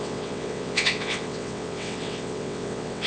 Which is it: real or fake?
fake